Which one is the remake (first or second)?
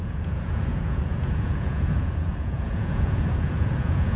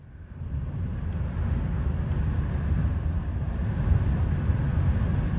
first